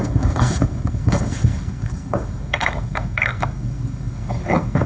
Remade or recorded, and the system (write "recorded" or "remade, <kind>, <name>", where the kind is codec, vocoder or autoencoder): remade, codec, SNAC